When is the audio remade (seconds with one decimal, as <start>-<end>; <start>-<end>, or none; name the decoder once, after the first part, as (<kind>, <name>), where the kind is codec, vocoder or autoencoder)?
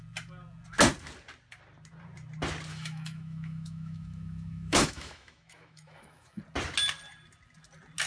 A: 2.7-6.4 (autoencoder, DAC-VAE)